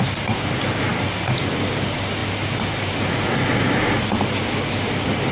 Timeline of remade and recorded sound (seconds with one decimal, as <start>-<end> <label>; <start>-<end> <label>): 0.0-5.3 recorded